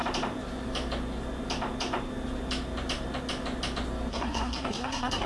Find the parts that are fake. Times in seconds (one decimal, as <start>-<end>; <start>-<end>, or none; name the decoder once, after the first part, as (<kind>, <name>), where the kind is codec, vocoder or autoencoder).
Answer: 4.1-5.3 (codec, SNAC)